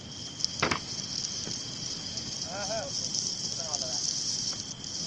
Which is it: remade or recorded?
recorded